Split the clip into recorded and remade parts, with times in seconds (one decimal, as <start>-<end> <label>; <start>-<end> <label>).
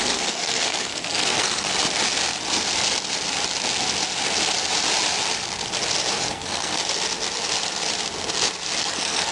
0.0-1.7 remade; 1.7-6.1 recorded; 6.1-6.8 remade; 6.8-8.8 recorded; 8.8-9.3 remade